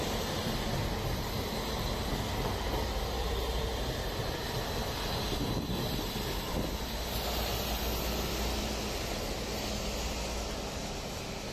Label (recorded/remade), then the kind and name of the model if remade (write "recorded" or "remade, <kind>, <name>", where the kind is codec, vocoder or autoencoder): recorded